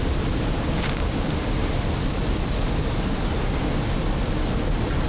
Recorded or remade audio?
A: recorded